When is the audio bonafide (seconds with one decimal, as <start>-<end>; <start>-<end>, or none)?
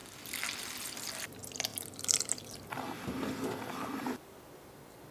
0.0-5.1